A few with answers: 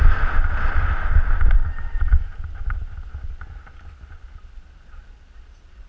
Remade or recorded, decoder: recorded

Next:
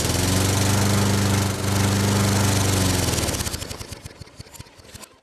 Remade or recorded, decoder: recorded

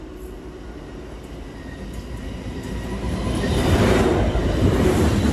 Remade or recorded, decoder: recorded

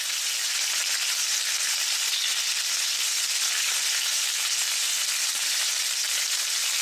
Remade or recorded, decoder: recorded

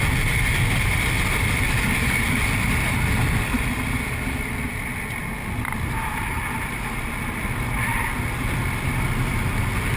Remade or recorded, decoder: recorded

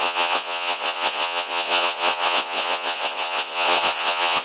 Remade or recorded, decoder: remade, vocoder, Vocos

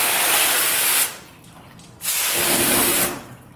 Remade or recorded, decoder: recorded